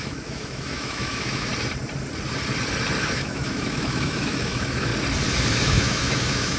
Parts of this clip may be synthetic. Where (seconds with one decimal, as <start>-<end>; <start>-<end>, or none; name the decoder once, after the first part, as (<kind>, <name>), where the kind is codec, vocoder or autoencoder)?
0.0-1.5 (autoencoder, DAC-VAE); 3.0-4.9; 5.5-6.6